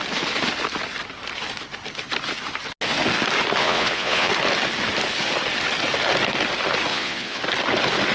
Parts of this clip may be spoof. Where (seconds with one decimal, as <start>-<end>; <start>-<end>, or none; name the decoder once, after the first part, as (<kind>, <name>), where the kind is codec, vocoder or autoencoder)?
3.6-4.3 (vocoder, Vocos); 6.9-7.4